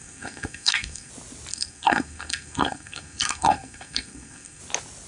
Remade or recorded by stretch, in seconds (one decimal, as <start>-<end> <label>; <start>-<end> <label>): 0.0-1.1 remade; 1.1-1.5 recorded; 1.5-4.6 remade; 4.6-5.1 recorded